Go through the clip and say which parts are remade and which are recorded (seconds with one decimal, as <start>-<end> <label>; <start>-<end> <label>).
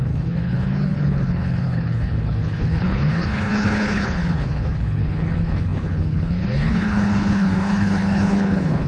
0.0-8.9 remade